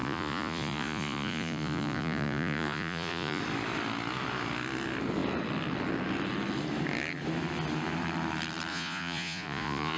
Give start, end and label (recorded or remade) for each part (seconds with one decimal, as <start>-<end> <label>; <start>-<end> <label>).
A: 0.0-3.4 remade; 3.4-8.7 recorded; 8.7-10.0 remade